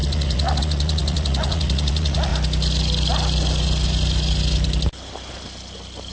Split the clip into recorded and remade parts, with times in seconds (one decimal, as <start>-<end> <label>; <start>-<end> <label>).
0.0-2.3 remade; 2.3-6.1 recorded